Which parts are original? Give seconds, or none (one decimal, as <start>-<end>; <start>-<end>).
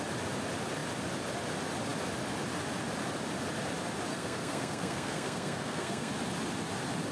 0.0-4.1; 6.1-7.1